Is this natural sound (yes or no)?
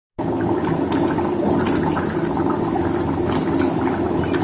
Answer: yes